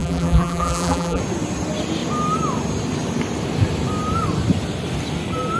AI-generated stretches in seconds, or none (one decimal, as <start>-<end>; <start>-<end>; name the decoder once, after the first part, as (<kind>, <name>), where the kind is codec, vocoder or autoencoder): 0.0-1.2 (vocoder, BigVGAN v2)